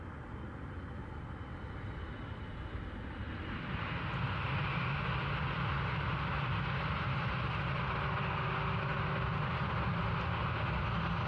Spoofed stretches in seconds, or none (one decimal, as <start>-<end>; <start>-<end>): none